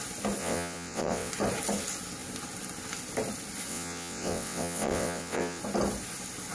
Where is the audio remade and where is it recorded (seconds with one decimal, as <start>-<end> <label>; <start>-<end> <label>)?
0.0-0.4 recorded; 0.4-1.3 remade; 1.3-3.7 recorded; 3.7-5.6 remade; 5.6-6.5 recorded